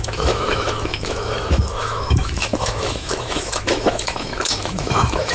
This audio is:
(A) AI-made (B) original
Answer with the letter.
A